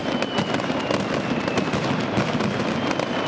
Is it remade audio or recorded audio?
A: recorded